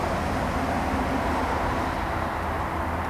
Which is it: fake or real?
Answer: real